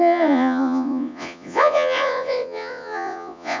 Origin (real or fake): fake